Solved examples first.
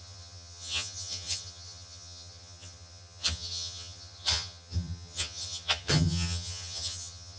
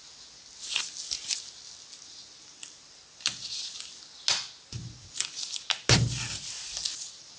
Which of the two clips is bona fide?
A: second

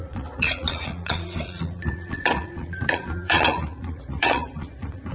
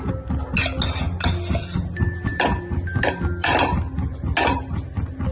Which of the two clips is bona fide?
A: second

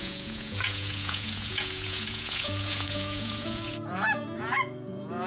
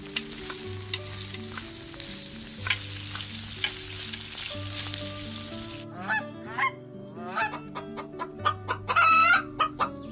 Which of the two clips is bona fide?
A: second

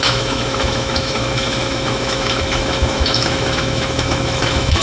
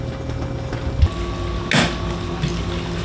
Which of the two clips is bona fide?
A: second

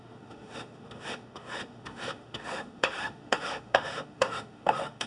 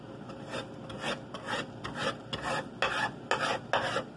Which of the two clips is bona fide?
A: second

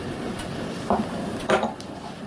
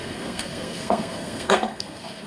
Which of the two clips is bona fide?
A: first